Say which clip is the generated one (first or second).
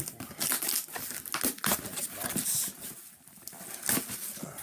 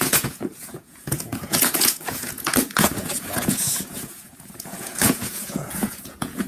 second